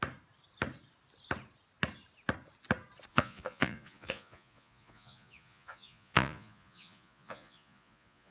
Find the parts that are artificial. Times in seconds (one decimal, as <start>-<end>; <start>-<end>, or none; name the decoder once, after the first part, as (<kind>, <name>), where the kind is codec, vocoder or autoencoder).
3.1-8.3 (vocoder, Vocos)